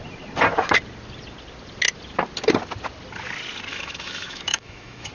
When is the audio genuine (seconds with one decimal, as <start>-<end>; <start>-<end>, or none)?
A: 0.0-3.7